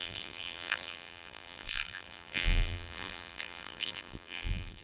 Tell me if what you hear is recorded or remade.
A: remade